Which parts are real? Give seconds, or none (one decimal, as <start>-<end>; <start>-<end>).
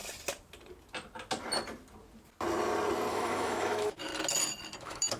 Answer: 0.0-3.1; 4.1-4.8